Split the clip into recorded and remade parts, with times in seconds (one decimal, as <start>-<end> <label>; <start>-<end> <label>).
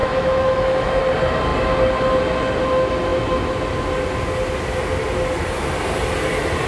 0.0-1.0 remade; 1.0-6.7 recorded